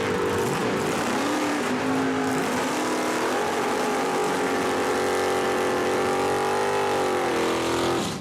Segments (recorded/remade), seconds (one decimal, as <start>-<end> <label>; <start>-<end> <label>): 0.0-0.6 recorded; 0.6-2.4 remade; 2.4-8.2 recorded